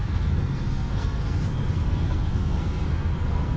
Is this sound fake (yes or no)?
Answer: yes